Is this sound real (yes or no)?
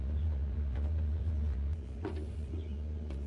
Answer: no